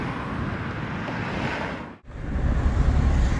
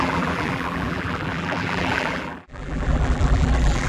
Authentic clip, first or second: first